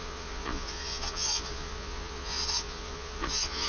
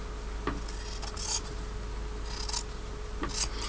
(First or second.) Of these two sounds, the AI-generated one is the first